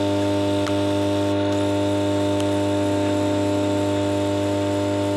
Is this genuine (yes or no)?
yes